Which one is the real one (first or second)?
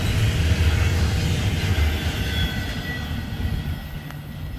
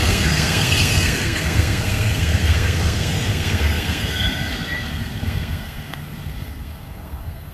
first